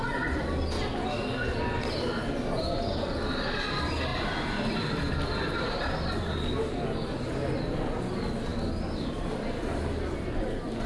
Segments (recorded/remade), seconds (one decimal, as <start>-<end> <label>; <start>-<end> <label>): 0.0-10.9 recorded